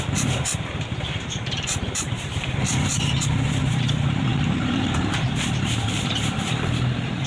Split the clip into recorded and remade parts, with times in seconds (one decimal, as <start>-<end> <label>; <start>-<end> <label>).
0.0-7.3 remade